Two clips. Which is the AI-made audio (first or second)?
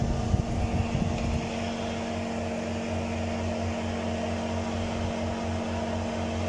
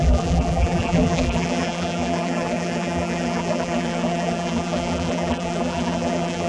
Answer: second